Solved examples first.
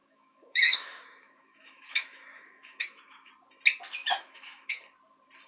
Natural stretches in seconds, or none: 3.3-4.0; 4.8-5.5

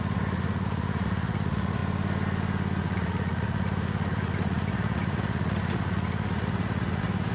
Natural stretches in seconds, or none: 1.8-2.8

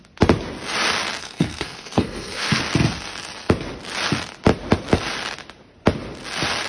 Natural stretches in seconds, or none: 0.0-1.2; 2.6-6.7

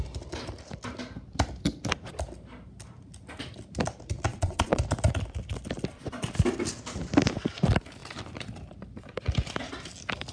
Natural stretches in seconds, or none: 0.0-4.3; 4.8-10.3

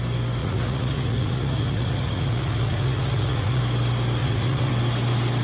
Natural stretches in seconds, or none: 0.0-0.4; 3.6-4.2; 4.7-5.4

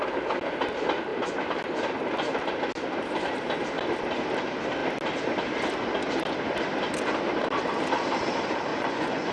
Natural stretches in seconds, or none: 0.0-8.7

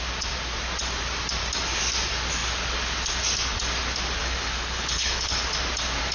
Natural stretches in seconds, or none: 0.0-4.2; 5.5-6.1

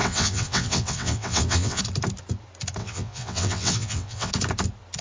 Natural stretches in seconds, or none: 1.8-2.8; 4.3-5.0